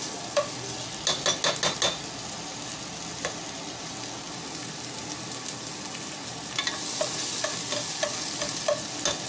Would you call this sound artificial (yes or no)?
no